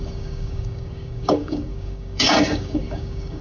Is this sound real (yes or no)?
no